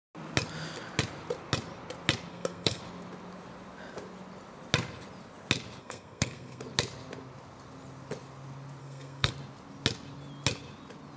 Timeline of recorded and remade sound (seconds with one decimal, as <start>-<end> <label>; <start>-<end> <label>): 0.0-2.3 recorded; 2.3-2.8 remade; 2.8-5.8 recorded; 5.8-6.6 remade; 6.6-8.8 recorded; 8.8-9.3 remade; 9.3-11.2 recorded